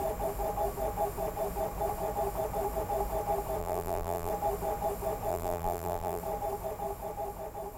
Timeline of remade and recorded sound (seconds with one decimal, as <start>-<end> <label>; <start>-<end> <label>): 0.0-3.6 recorded; 3.6-4.3 remade; 4.3-5.3 recorded; 5.3-6.2 remade; 6.2-7.8 recorded